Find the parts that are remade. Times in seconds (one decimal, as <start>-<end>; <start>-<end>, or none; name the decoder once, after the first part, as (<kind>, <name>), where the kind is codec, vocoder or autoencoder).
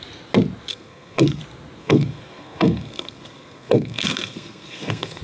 0.7-1.4 (codec, SNAC); 1.8-5.2